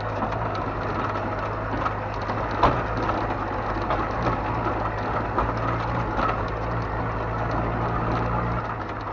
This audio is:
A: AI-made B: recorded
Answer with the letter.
B